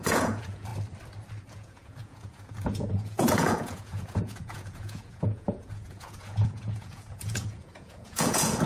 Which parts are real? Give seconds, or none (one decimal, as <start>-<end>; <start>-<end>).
0.7-1.5